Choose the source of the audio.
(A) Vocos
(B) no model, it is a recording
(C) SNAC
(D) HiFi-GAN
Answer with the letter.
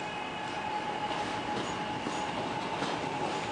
B